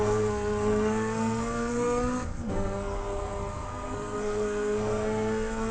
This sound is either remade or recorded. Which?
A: remade